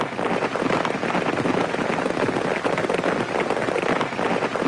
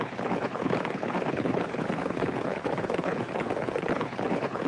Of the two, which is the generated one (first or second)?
second